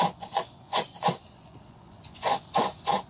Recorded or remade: remade